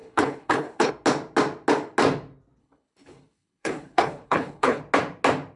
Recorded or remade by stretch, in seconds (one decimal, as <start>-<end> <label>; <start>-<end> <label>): 0.0-0.9 remade; 0.9-2.6 recorded; 2.6-4.8 remade; 4.8-5.6 recorded